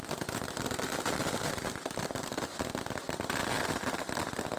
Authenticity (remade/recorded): recorded